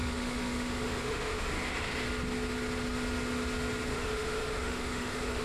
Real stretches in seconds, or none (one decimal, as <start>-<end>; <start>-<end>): 1.5-3.9